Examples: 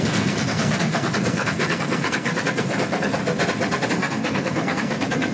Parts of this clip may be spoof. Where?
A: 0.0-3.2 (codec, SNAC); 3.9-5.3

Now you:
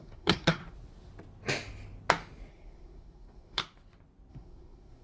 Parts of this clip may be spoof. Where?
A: 0.0-0.6 (codec, SNAC); 2.5-3.6; 4.3-5.0

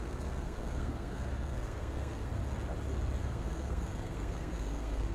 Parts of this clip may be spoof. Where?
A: 0.0-2.4 (codec, SNAC); 3.2-5.1

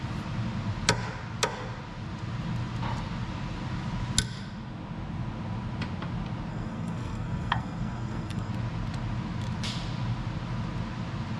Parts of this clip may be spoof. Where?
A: 6.5-8.5 (codec, SNAC)

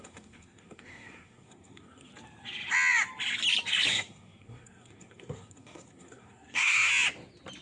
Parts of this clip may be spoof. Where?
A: 0.0-2.1 (codec, SNAC); 3.9-6.9